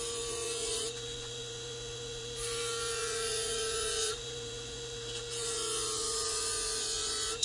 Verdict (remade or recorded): remade